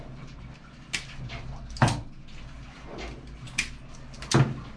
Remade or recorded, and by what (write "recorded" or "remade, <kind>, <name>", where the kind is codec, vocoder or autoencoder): recorded